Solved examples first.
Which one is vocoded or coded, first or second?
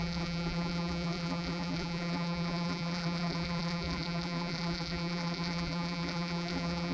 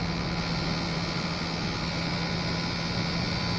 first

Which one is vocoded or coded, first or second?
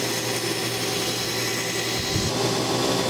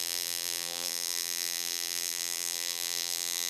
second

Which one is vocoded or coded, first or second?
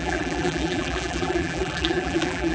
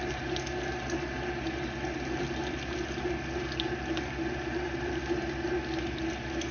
first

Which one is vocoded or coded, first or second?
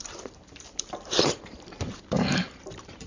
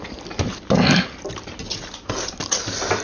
first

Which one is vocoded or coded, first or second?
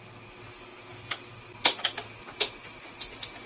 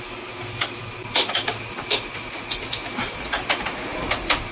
second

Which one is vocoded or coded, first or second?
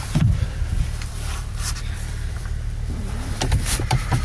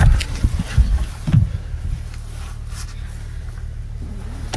first